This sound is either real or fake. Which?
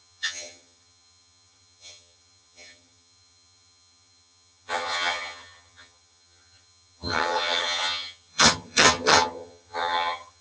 fake